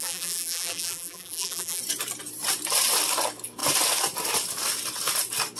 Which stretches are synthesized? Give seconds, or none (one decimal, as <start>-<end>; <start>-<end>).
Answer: 0.0-1.8